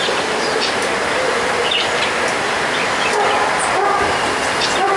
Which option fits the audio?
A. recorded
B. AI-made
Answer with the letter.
A